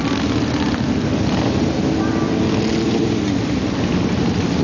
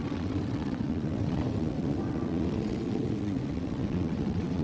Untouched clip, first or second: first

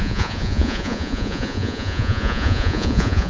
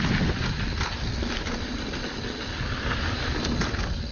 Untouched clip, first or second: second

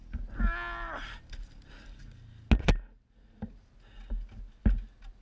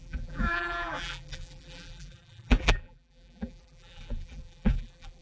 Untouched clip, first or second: first